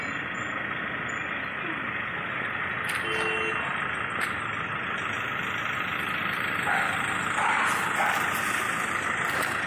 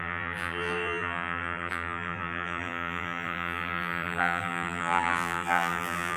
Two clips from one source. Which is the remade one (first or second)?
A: second